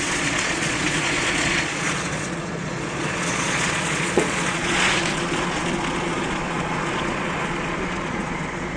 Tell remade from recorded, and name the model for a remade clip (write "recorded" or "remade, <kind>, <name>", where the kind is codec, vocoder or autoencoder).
remade, vocoder, Vocos